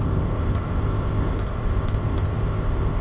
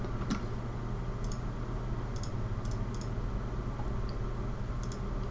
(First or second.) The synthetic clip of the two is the first